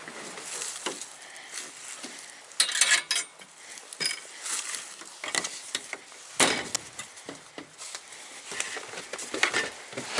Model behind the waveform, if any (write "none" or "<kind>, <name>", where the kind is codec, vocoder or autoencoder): none